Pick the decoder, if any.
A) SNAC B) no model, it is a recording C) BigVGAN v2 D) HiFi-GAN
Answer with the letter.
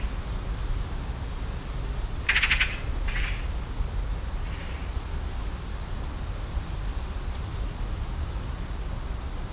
B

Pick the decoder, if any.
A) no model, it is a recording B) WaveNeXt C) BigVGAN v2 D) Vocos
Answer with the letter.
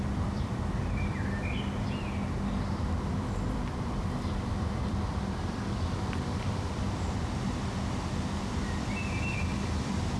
C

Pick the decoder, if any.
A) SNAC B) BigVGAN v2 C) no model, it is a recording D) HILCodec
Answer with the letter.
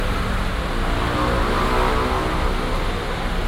C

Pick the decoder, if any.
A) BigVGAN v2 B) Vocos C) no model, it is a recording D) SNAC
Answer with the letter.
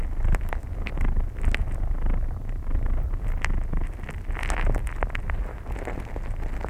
C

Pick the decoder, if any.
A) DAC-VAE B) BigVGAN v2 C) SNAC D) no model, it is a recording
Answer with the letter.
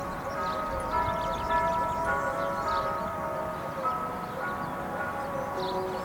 D